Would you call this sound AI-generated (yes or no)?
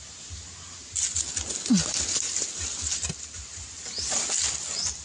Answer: no